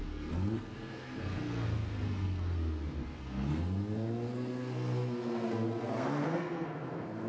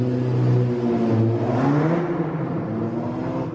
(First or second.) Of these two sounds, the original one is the second